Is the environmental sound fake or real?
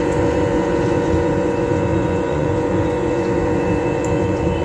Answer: fake